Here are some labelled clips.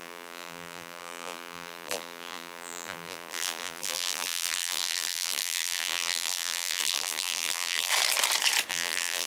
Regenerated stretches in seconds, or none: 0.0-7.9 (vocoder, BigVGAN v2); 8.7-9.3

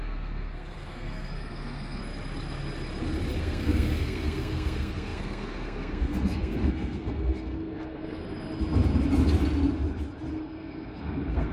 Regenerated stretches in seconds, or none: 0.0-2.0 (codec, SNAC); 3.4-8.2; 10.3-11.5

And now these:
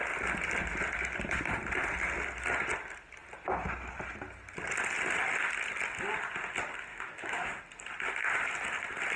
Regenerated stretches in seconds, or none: 6.9-7.6 (autoencoder, DAC-VAE)

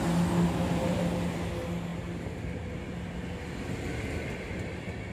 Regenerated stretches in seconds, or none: none